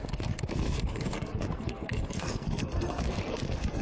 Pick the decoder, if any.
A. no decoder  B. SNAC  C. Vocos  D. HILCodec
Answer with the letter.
B